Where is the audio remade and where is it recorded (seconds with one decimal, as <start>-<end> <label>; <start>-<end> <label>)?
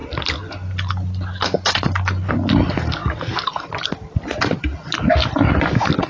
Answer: 0.0-3.0 recorded; 3.0-3.7 remade; 3.7-6.1 recorded